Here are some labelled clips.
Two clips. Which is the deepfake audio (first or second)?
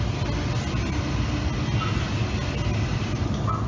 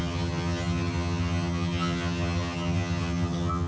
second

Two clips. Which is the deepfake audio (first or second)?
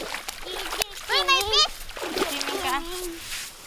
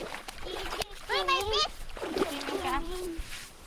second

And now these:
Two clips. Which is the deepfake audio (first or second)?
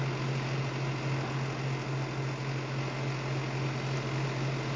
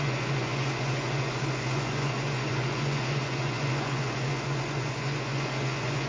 second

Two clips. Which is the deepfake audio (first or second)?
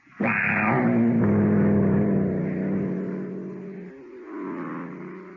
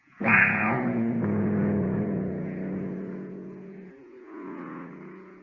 second